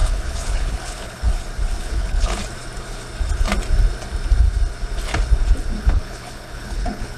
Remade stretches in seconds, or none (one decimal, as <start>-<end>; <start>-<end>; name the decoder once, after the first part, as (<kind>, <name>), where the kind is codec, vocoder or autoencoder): 0.0-1.3 (codec, HILCodec); 1.8-2.4; 5.8-7.2